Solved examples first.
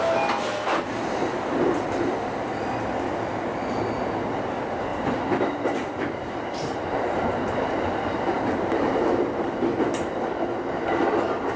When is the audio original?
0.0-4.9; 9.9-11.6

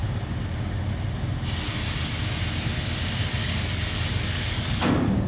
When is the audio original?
0.0-3.4